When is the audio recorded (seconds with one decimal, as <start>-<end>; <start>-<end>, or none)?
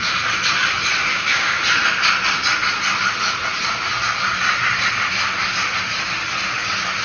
0.0-1.1; 1.6-7.0